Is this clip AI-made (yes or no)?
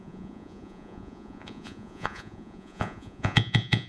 yes